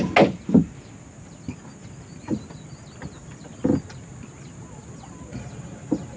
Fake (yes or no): no